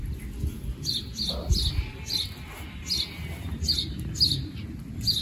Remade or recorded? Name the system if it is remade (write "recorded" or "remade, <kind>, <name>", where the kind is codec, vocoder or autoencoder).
recorded